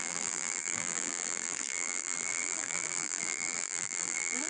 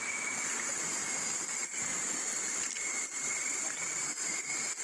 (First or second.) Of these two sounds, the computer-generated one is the first